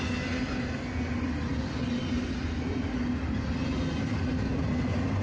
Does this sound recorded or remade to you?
recorded